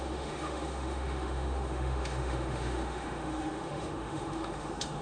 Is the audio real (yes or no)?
no